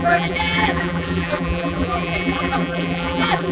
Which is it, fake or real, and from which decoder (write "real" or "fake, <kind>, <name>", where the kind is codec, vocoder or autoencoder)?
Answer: fake, vocoder, BigVGAN v2